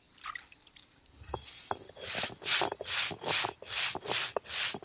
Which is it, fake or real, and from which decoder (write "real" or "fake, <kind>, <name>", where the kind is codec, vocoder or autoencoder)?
real